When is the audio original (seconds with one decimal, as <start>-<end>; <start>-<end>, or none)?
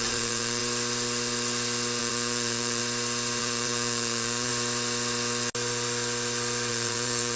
0.6-2.0; 2.8-3.4; 4.5-6.7